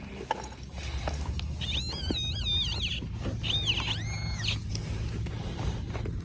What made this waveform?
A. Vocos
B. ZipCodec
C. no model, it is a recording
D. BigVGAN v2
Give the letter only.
C